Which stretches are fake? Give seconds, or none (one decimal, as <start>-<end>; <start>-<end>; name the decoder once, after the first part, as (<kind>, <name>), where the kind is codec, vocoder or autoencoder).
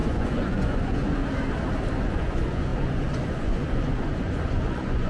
0.0-1.2 (vocoder, Vocos); 2.0-5.1